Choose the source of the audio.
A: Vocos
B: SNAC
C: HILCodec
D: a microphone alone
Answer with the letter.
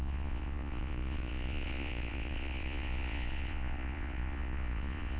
A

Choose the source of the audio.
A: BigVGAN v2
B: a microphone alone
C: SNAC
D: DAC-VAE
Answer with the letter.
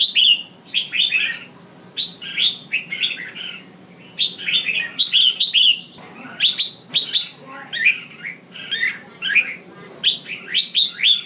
B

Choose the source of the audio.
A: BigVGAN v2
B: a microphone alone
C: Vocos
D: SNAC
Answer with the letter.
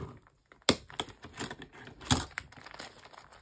B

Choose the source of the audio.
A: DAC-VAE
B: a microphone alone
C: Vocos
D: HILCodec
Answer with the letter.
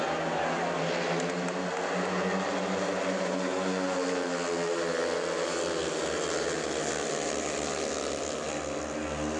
B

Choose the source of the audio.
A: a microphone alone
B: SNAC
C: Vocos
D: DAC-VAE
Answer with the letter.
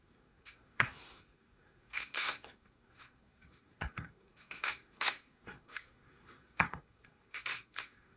B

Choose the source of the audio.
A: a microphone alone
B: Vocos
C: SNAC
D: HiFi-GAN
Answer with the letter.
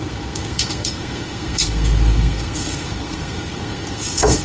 C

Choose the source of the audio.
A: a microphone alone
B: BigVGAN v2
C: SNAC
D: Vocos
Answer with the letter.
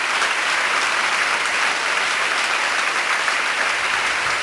A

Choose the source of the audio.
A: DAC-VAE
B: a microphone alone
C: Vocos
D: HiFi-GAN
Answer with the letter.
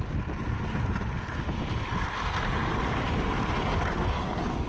B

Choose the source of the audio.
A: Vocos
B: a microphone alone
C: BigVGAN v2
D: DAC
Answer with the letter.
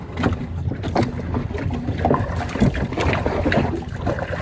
B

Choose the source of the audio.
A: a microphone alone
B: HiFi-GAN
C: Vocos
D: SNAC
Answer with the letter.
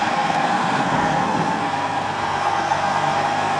D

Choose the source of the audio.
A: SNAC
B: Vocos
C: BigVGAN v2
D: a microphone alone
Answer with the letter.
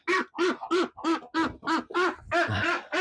D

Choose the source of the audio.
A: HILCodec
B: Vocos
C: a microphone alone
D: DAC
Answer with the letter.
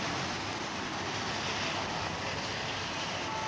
C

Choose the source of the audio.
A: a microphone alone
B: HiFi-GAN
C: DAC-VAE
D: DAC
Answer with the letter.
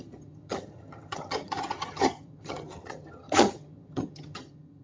B